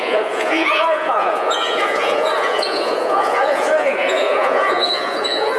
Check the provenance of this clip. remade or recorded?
remade